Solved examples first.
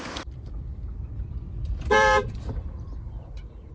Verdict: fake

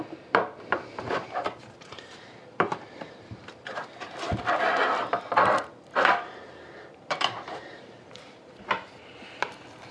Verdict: fake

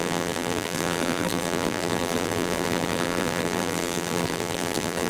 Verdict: fake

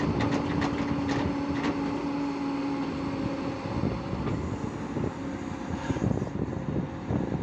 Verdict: real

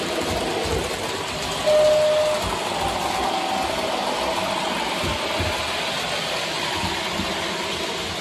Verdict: real